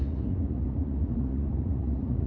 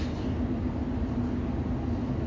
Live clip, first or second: second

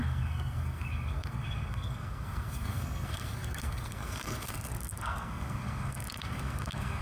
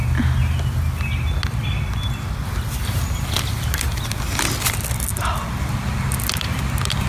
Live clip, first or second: second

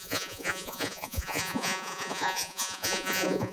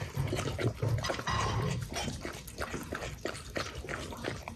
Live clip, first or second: second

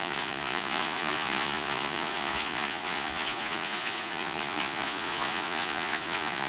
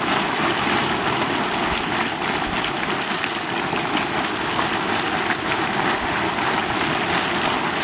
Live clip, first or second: second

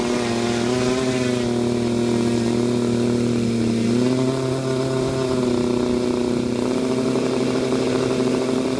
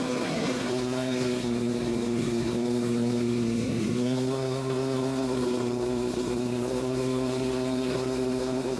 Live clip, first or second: first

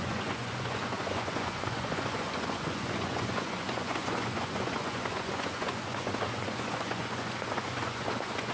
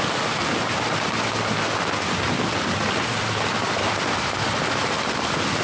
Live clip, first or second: second